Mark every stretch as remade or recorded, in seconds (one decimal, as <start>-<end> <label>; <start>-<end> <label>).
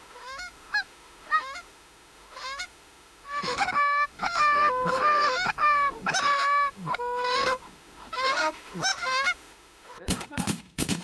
0.0-11.0 remade